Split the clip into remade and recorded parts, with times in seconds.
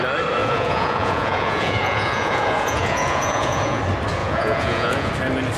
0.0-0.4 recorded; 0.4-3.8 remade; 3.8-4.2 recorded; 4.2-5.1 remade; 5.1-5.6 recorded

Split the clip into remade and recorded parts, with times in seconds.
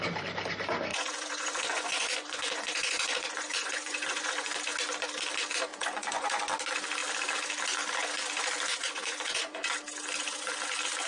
0.0-0.9 recorded; 0.9-4.3 remade; 4.3-5.7 recorded; 5.7-6.4 remade; 6.4-8.8 recorded; 8.8-9.7 remade; 9.7-11.1 recorded